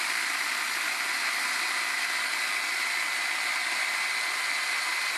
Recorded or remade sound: recorded